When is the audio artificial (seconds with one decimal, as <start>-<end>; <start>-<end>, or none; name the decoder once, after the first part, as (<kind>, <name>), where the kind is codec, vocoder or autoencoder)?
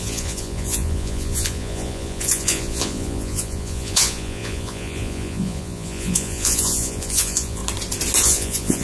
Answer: 0.0-7.6 (vocoder, Vocos); 8.2-8.8